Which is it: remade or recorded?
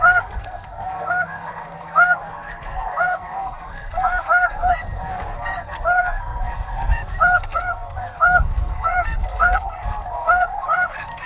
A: remade